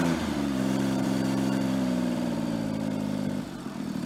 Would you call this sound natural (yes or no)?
no